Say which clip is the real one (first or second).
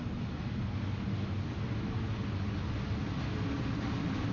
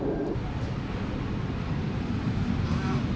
first